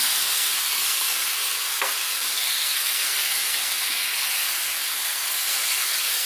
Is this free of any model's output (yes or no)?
no